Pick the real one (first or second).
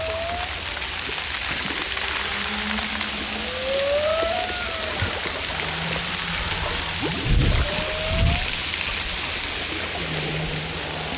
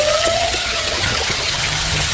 first